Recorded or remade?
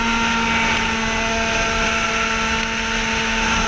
recorded